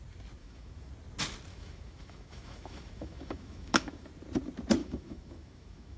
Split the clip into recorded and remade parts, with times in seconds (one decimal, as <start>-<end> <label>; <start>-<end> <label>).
0.0-0.4 recorded; 0.4-0.9 remade; 0.9-1.5 recorded; 1.5-4.1 remade; 4.1-4.8 recorded; 4.8-6.0 remade